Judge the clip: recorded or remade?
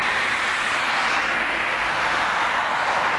recorded